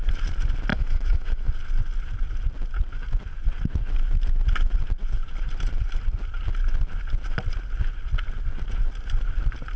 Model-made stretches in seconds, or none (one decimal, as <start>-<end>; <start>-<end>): 0.7-1.5